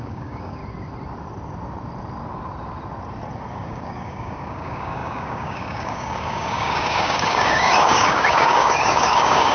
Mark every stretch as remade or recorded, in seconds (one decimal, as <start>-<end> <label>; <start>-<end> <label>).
0.0-0.6 remade; 0.6-3.5 recorded; 3.5-9.5 remade